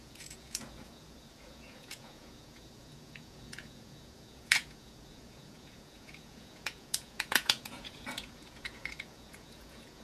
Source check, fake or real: fake